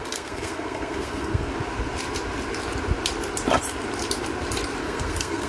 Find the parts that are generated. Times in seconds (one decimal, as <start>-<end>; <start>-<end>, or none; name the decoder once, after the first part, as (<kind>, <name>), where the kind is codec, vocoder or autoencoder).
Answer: 0.0-1.5 (codec, SNAC); 4.8-5.5